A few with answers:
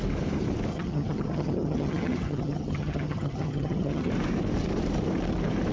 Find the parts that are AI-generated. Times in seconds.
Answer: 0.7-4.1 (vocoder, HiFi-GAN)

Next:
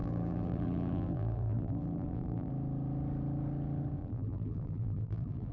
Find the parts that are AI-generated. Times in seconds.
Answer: 0.0-2.5 (vocoder, BigVGAN v2); 4.0-5.5

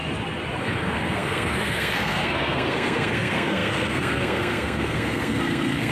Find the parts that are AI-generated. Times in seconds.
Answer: 0.6-5.9 (codec, SNAC)

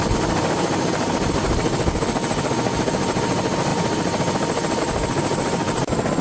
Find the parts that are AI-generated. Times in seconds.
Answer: none

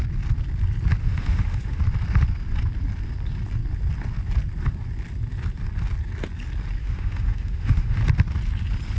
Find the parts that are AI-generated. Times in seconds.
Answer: 1.0-1.8 (autoencoder, DAC-VAE); 6.8-8.0

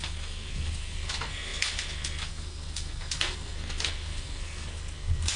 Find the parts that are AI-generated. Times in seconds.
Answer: 0.0-5.4 (codec, SNAC)

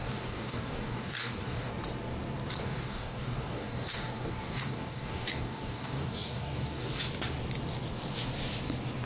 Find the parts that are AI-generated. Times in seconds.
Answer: 0.0-1.7 (codec, DAC); 2.6-7.0

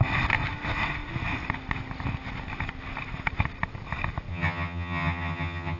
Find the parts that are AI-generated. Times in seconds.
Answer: 4.3-5.8 (vocoder, HiFi-GAN)